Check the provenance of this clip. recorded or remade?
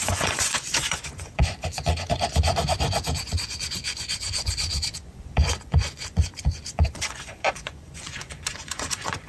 remade